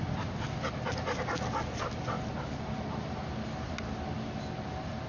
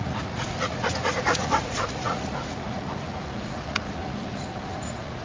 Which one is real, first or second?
first